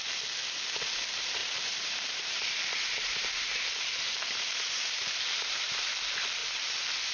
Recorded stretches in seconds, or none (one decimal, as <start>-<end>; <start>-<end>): 0.0-1.4; 5.7-6.4